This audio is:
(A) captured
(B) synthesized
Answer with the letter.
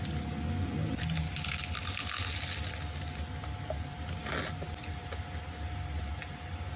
A